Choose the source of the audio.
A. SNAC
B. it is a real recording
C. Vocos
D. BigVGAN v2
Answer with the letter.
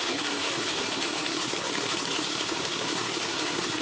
A